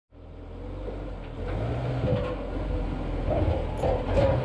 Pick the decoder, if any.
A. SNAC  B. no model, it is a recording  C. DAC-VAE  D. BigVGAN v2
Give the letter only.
B